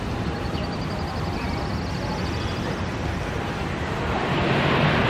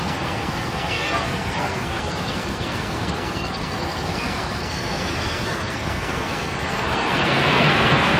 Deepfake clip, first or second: second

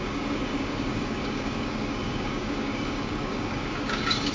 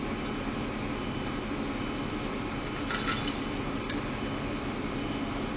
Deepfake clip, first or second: first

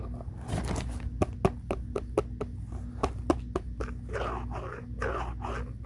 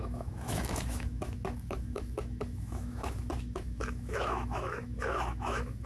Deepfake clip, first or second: second